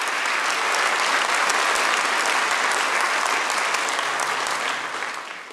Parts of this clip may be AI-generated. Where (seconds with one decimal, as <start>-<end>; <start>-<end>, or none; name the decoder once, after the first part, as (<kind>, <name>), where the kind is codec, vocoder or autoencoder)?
none